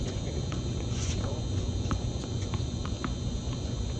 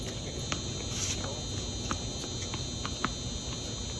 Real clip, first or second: second